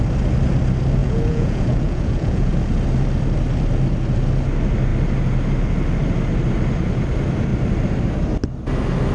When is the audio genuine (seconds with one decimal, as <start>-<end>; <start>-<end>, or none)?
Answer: 0.0-1.0; 2.5-9.1